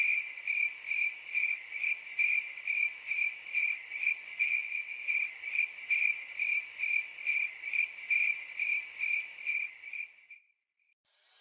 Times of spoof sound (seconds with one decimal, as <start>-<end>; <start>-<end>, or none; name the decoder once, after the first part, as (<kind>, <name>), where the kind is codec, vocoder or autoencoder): 4.2-5.1 (vocoder, Vocos)